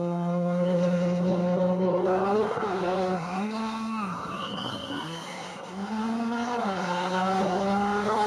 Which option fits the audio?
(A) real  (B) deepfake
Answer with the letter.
B